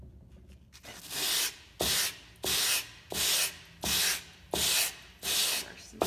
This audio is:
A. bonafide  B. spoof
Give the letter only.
A